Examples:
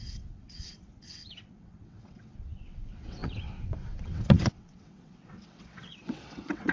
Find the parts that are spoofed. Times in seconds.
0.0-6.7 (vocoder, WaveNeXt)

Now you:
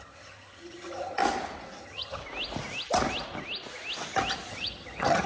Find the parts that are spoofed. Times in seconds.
0.0-1.2 (vocoder, HiFi-GAN); 1.8-2.2; 4.5-5.3

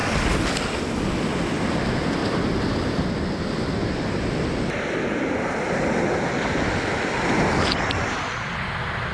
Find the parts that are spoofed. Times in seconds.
none

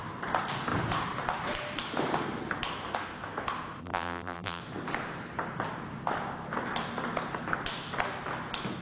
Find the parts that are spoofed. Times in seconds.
3.8-4.6 (vocoder, BigVGAN v2)

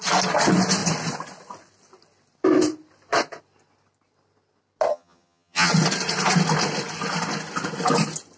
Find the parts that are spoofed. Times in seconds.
4.9-5.7 (vocoder, HiFi-GAN)

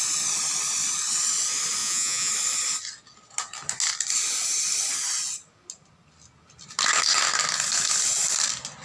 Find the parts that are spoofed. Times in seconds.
1.8-2.3 (vocoder, Vocos)